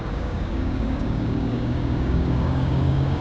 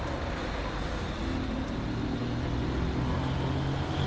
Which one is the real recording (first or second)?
second